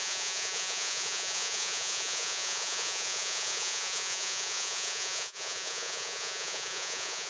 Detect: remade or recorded remade